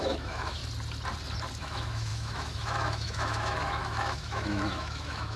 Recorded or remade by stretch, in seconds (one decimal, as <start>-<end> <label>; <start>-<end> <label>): 0.0-0.6 remade; 0.6-1.6 recorded; 1.6-5.4 remade